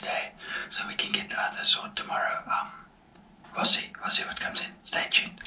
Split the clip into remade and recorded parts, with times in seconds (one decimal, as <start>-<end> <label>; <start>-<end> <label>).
0.0-3.1 recorded; 3.1-5.5 remade